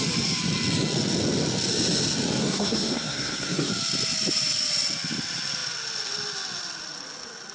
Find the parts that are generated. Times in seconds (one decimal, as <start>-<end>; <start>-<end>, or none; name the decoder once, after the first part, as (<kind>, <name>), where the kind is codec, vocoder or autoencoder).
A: 2.4-3.7 (codec, SNAC)